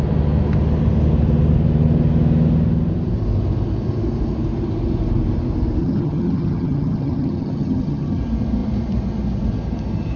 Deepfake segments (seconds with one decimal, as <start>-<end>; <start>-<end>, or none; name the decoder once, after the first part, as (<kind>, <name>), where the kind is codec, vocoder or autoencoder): 5.8-8.2 (vocoder, HiFi-GAN)